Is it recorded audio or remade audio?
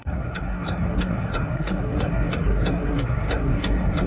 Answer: remade